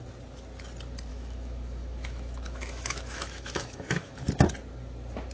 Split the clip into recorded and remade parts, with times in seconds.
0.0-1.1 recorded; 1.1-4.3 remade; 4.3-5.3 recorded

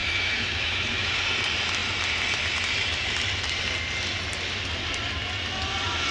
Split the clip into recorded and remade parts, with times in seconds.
0.0-1.2 remade; 1.2-6.1 recorded

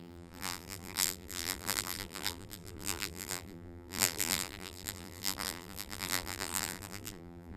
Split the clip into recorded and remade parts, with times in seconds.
0.0-7.6 remade